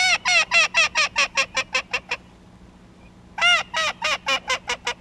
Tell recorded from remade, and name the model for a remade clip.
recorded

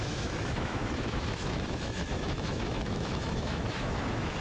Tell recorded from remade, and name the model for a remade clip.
remade, autoencoder, DAC-VAE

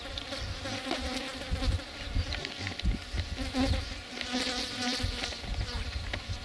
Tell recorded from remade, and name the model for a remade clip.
recorded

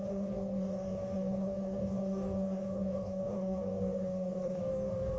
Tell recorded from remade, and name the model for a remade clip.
remade, codec, DAC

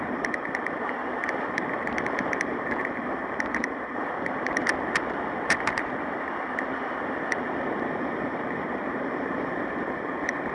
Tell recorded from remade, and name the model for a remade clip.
remade, vocoder, BigVGAN v2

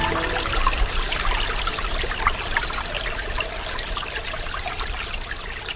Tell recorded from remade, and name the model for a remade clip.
recorded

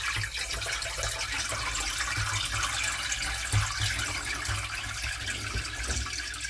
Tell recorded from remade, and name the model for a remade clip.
recorded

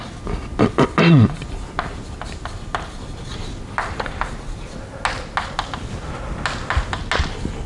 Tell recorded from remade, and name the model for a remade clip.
recorded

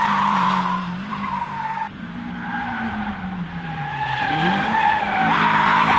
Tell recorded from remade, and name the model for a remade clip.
remade, vocoder, BigVGAN v2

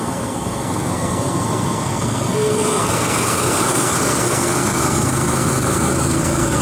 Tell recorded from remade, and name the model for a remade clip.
remade, codec, SNAC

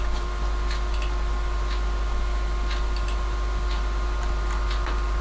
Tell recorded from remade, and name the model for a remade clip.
recorded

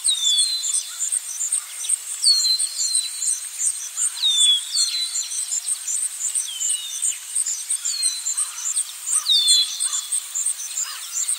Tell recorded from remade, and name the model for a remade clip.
remade, vocoder, BigVGAN v2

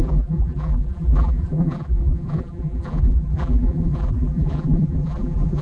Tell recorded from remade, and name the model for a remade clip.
remade, vocoder, BigVGAN v2